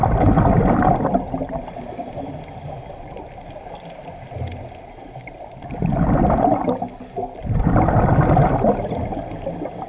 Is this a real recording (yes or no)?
yes